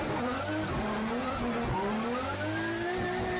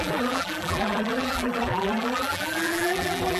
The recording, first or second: first